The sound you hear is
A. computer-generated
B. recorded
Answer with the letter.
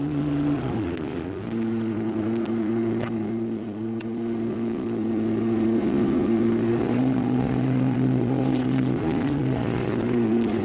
A